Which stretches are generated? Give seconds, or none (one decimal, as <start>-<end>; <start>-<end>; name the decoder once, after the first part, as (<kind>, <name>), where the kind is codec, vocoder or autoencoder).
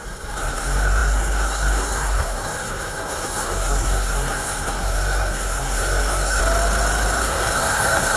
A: 0.0-6.4 (codec, SNAC); 7.2-8.2